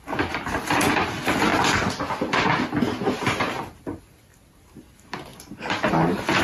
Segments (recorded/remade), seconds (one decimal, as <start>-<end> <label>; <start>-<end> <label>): 0.0-6.4 recorded